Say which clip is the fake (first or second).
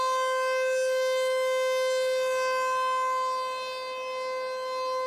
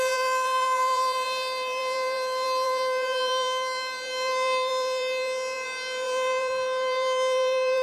second